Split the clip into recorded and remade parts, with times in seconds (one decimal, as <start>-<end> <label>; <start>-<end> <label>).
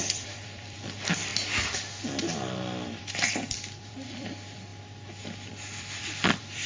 0.0-1.3 remade; 1.3-2.3 recorded; 2.3-4.7 remade; 4.7-5.5 recorded; 5.5-6.7 remade